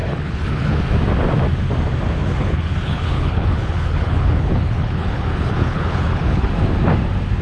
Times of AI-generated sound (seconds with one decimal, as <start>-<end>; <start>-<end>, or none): 0.0-0.8; 2.2-6.5

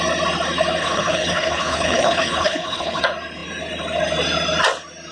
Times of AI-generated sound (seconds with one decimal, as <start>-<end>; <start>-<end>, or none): 0.8-3.0

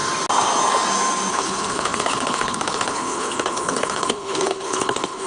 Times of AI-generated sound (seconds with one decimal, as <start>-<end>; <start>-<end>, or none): 1.3-5.3

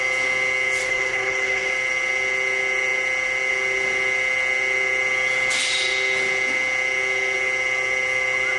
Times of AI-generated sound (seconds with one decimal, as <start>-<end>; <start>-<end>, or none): 0.8-1.7

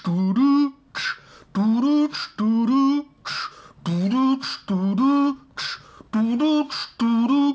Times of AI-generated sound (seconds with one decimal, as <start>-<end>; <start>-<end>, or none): none

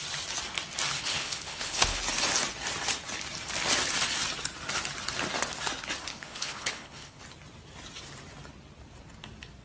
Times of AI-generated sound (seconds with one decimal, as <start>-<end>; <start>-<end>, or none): 0.9-2.0; 6.1-7.2